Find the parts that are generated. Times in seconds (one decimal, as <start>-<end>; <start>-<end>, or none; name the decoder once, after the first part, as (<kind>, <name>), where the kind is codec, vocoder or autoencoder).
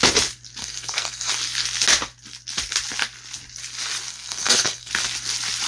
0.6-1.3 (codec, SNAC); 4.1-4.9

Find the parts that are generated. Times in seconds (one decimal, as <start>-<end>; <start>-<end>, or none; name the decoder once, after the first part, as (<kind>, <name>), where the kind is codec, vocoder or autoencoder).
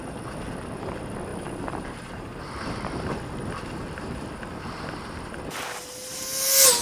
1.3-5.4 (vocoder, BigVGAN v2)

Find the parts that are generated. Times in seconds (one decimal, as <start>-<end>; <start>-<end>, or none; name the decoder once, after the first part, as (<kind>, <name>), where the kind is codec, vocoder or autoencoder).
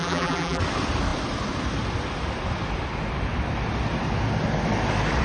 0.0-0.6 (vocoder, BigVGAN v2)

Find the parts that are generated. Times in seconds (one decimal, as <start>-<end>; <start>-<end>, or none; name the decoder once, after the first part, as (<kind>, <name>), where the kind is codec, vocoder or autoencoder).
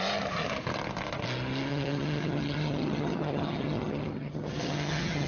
1.7-5.3 (vocoder, HiFi-GAN)